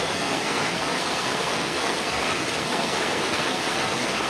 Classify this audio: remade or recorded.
remade